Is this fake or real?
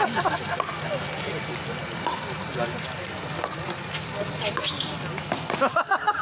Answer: real